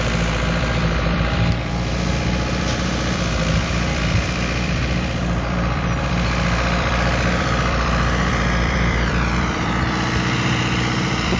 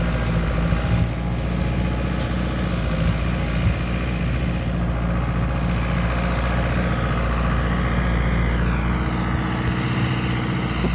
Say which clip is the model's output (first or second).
first